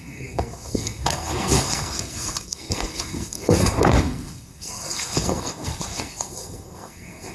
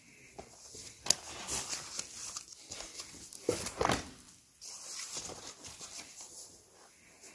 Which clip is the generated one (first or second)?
first